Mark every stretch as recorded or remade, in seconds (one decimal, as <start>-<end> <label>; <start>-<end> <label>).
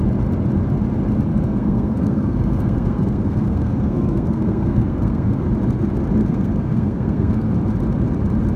0.0-1.3 recorded; 1.3-5.4 remade; 5.4-6.2 recorded; 6.2-7.5 remade; 7.5-8.6 recorded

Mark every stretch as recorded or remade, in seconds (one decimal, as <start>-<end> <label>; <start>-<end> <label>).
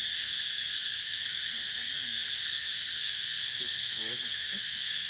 0.0-5.1 remade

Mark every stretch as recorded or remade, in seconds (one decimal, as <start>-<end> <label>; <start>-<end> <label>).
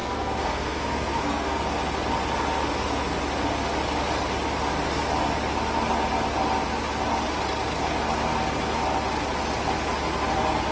0.0-1.6 remade; 1.6-10.7 recorded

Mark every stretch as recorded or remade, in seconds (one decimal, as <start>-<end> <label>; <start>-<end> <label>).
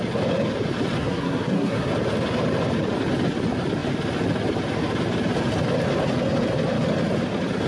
0.0-1.0 recorded; 1.0-1.9 remade; 1.9-7.7 recorded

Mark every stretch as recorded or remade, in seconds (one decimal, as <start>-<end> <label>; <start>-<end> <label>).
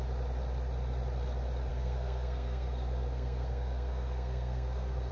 0.0-1.7 recorded; 1.7-5.1 remade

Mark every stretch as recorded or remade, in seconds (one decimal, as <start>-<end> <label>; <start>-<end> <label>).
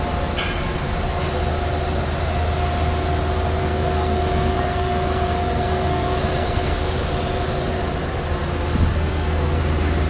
0.0-3.6 recorded; 3.6-6.8 remade; 6.8-8.9 recorded; 8.9-9.6 remade; 9.6-10.1 recorded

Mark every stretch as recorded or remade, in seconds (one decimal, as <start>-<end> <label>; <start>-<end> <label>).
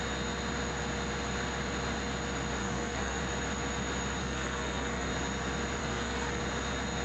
0.0-2.6 recorded; 2.6-3.2 remade; 3.2-4.2 recorded; 4.2-5.1 remade; 5.1-5.8 recorded; 5.8-6.4 remade; 6.4-7.0 recorded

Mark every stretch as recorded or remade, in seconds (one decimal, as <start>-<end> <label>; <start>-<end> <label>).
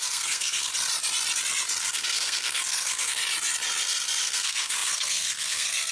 0.0-0.7 remade; 0.7-1.8 recorded; 1.8-3.2 remade; 3.2-4.2 recorded; 4.2-5.9 remade